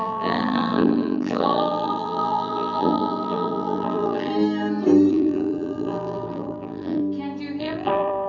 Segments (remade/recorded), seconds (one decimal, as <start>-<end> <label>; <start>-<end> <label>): 0.0-4.3 remade; 4.3-5.1 recorded; 5.1-7.0 remade; 7.0-7.6 recorded; 7.6-8.3 remade

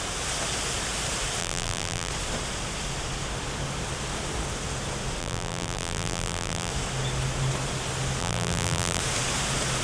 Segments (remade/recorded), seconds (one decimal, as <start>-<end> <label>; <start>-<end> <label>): 0.0-1.4 recorded; 1.4-2.1 remade; 2.1-5.2 recorded; 5.2-6.7 remade; 6.7-8.2 recorded; 8.2-9.0 remade; 9.0-9.8 recorded

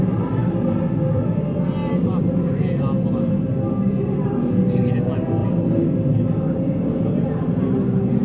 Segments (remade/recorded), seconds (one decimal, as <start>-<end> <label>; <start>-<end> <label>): 0.0-0.4 recorded; 0.4-1.2 remade; 1.2-1.8 recorded; 1.8-3.3 remade; 3.3-5.4 recorded; 5.4-6.1 remade; 6.1-8.2 recorded

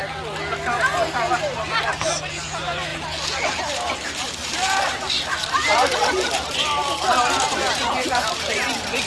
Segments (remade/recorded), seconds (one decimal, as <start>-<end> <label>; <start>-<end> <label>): 0.0-1.3 recorded; 1.3-2.9 remade; 2.9-3.6 recorded; 3.6-9.1 remade